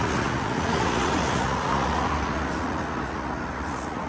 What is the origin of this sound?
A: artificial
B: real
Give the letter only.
A